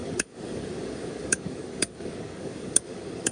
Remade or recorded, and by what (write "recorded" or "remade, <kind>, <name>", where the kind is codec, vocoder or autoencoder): remade, codec, DAC